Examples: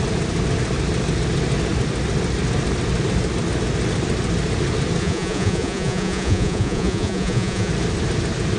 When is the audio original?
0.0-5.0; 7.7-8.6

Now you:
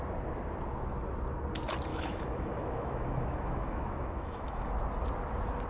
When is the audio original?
0.0-1.9; 4.7-5.7

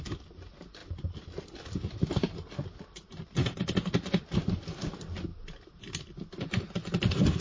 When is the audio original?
0.0-7.4

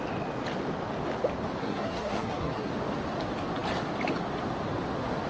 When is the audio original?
0.0-1.6; 2.7-5.3

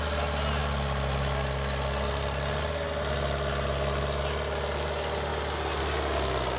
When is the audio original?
0.0-6.6

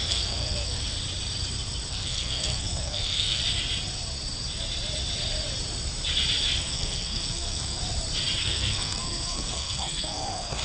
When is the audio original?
0.8-1.9; 3.4-6.6; 7.8-8.4

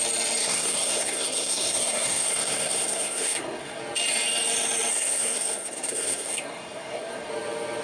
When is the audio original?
0.0-0.4; 3.8-4.9; 7.3-7.8

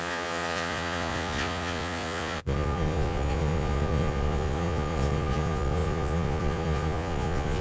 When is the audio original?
none